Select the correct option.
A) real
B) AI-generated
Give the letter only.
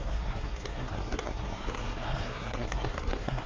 B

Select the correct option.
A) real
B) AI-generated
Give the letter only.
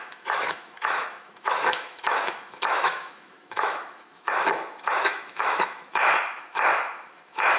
B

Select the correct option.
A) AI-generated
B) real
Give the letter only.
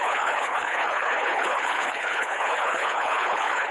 A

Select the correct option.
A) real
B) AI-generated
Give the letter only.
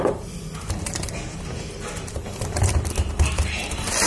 B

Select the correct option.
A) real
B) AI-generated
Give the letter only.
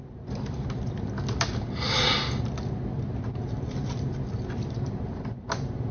A